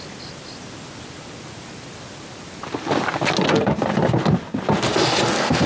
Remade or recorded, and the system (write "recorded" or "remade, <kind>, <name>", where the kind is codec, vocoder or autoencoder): recorded